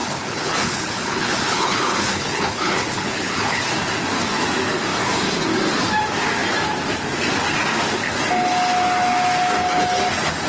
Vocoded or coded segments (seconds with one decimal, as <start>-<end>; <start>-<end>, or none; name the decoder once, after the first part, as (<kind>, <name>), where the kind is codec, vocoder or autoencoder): 0.0-3.6 (codec, HILCodec)